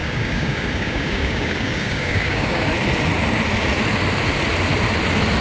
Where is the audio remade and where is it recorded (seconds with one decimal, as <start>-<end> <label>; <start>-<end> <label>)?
0.0-2.7 remade; 2.7-5.4 recorded